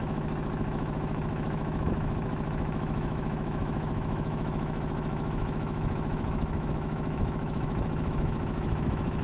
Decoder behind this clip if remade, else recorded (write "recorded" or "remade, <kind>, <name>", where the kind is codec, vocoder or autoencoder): remade, autoencoder, DAC-VAE